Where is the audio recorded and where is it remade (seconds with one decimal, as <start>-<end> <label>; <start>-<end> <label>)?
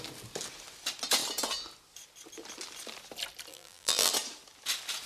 0.0-3.5 recorded; 3.5-4.1 remade; 4.1-5.1 recorded